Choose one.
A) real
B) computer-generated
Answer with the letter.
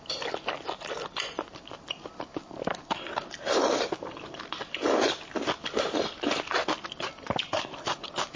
B